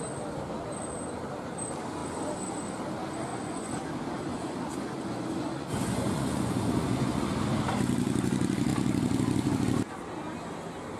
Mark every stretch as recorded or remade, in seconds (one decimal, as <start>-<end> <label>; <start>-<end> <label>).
0.0-3.3 recorded; 3.3-3.9 remade; 3.9-4.3 recorded; 4.3-7.3 remade; 7.3-11.0 recorded